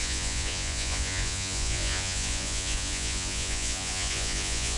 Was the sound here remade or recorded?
remade